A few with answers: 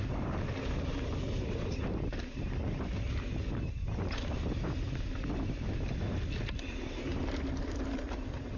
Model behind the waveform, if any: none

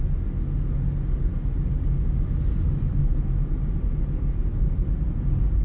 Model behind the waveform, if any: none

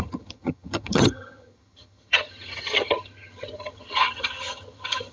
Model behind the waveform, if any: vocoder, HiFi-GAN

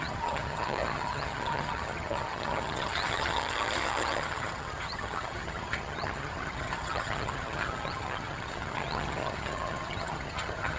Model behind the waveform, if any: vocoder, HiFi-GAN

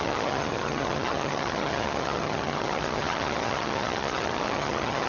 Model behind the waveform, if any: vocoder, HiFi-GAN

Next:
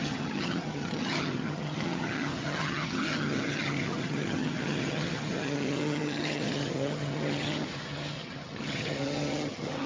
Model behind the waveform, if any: vocoder, HiFi-GAN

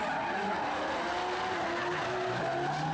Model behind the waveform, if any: none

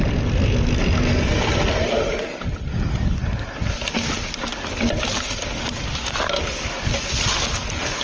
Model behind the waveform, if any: none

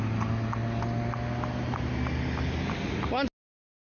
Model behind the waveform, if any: none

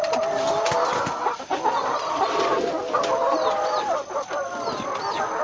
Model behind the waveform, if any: none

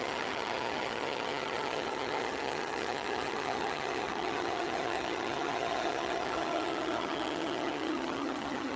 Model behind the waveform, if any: vocoder, HiFi-GAN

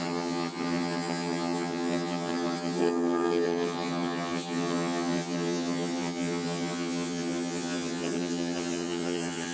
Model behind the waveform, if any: vocoder, HiFi-GAN